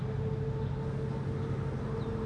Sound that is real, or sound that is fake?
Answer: real